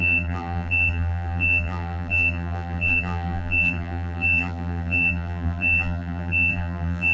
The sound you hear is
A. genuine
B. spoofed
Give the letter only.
B